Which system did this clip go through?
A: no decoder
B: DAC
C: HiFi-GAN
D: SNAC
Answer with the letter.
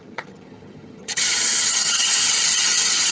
C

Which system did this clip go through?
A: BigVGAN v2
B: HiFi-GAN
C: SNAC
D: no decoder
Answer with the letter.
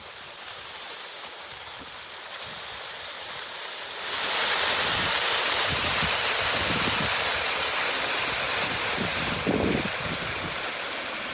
D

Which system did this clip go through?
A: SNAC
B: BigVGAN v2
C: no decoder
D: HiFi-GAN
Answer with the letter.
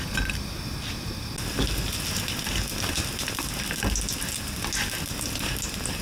C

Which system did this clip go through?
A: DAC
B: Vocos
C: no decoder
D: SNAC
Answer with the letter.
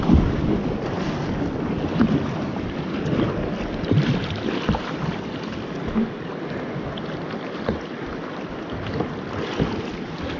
C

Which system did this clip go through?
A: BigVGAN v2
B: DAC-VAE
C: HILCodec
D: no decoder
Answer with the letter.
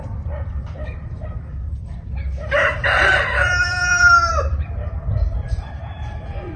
A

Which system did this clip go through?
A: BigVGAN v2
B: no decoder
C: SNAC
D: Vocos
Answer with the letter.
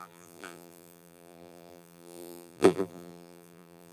A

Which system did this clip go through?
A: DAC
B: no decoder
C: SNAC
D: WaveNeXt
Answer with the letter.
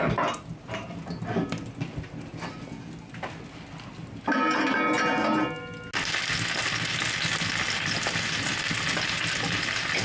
B